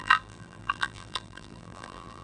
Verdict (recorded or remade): remade